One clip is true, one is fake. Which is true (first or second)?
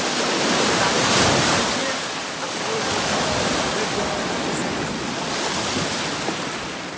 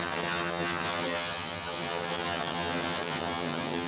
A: first